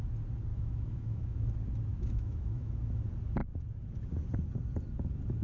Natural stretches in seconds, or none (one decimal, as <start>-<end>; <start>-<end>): 0.0-0.5; 1.5-1.9; 3.0-5.4